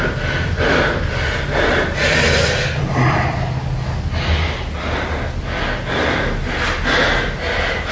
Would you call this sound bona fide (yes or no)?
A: yes